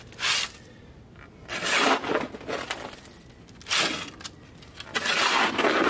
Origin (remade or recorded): recorded